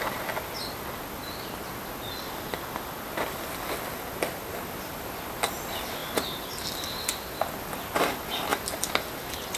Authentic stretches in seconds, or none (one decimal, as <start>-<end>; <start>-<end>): 0.0-1.2; 1.7-9.6